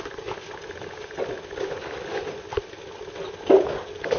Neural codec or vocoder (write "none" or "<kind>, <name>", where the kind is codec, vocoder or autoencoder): none